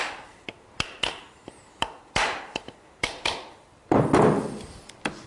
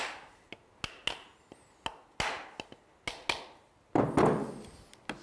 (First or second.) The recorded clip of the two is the second